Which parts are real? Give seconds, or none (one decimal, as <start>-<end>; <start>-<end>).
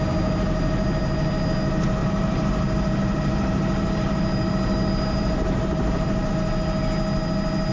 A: 0.0-2.0; 6.3-7.7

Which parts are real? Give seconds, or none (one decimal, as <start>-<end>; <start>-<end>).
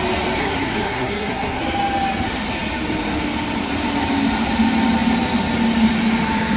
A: 0.0-0.4; 1.6-6.6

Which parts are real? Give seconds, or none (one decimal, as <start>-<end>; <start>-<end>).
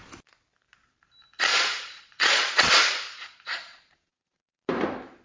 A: 0.0-1.5; 4.6-5.2